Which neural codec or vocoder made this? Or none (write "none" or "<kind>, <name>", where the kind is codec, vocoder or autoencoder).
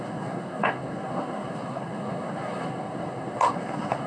codec, SNAC